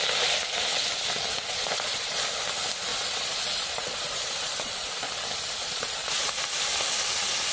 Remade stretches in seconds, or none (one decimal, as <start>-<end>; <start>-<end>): 1.3-2.3; 2.9-5.1; 5.6-6.3